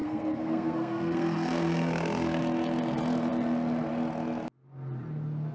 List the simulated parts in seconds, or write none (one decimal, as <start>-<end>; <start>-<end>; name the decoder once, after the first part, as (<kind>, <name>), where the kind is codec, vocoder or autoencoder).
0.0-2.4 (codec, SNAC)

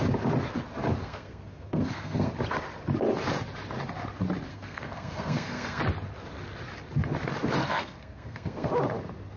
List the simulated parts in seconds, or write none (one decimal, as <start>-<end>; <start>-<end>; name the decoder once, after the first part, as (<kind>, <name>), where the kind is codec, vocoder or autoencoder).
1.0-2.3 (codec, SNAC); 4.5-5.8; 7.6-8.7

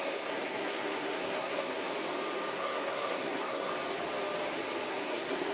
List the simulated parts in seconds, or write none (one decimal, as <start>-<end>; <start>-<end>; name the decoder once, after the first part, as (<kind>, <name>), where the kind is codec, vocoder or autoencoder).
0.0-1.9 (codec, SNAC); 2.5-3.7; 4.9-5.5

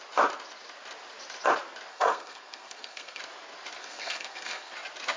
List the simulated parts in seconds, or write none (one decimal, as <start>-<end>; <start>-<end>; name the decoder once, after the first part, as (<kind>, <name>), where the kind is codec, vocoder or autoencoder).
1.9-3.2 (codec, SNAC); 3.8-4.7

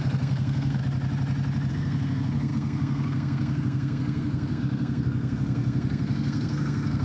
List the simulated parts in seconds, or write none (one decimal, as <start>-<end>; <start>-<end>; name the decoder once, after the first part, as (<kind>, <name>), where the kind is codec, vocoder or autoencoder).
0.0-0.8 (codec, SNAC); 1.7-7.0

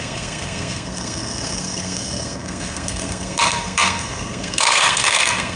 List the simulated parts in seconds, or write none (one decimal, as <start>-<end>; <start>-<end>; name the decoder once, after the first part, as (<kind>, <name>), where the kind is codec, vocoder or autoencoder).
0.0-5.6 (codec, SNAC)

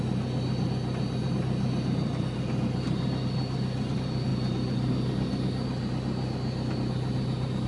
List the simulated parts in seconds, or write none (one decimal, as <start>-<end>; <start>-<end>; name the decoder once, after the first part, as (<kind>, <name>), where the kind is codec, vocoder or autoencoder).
none